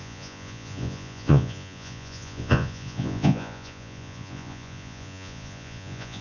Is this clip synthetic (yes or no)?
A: yes